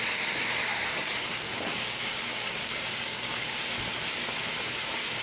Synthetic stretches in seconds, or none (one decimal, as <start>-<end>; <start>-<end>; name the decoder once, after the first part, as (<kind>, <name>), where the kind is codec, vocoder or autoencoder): 0.6-3.7 (codec, DAC)